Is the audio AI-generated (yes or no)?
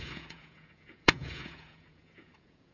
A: yes